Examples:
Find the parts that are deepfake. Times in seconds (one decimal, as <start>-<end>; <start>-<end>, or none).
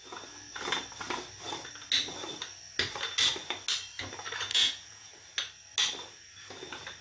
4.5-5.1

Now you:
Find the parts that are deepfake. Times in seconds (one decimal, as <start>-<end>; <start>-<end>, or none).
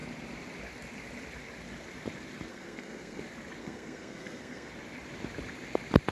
2.5-3.2; 3.6-4.7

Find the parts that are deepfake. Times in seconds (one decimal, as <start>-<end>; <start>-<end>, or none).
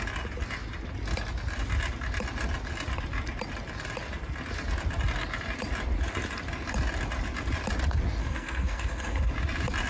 8.2-9.3